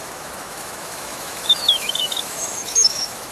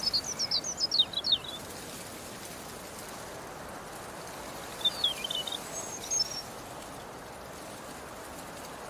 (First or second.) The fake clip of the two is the first